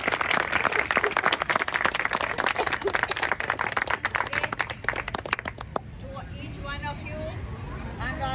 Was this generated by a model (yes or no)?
no